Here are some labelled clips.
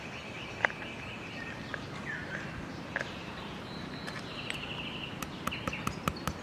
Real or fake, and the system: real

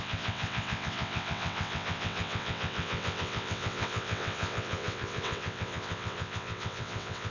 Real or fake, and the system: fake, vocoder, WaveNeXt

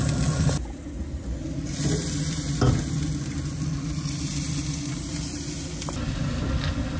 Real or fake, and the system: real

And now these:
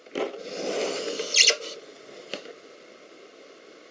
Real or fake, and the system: real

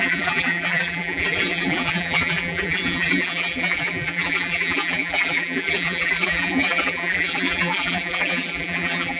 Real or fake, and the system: fake, vocoder, BigVGAN v2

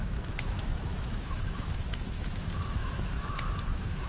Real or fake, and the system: fake, autoencoder, DAC-VAE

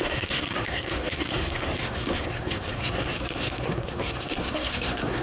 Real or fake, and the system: fake, codec, SNAC